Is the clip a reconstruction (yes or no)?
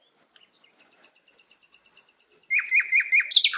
no